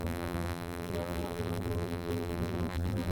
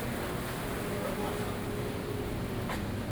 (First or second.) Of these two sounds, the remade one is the first